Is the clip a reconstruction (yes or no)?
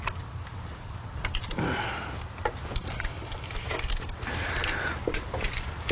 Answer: no